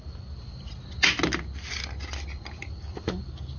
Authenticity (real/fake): real